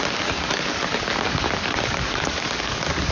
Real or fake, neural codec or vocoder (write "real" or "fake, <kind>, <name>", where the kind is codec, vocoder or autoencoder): fake, codec, DAC